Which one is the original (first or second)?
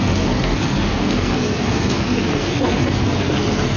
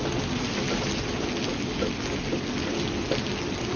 second